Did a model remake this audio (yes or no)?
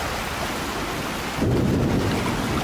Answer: no